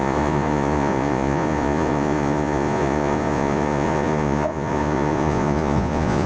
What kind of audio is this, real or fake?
fake